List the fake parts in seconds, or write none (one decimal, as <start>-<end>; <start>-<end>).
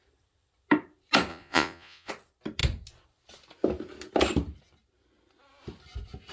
1.3-2.1